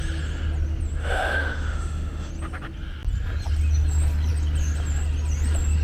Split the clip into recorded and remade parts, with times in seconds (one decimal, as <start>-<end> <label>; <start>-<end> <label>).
0.0-1.0 recorded; 1.0-2.3 remade; 2.3-5.8 recorded